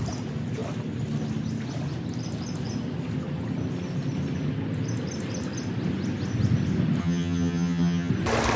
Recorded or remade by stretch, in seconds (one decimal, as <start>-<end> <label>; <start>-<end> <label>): 0.0-7.0 recorded; 7.0-8.1 remade; 8.1-8.6 recorded